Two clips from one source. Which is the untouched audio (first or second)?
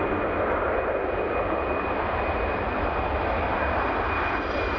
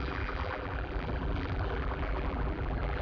first